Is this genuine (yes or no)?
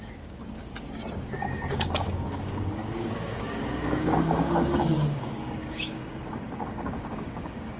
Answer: no